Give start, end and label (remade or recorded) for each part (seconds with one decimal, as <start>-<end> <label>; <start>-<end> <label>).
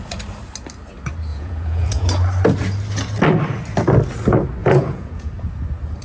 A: 0.0-1.3 recorded; 1.3-2.1 remade; 2.1-4.6 recorded; 4.6-5.3 remade; 5.3-6.0 recorded